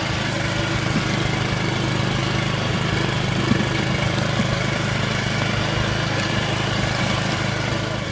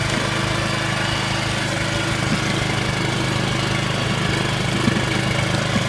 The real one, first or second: second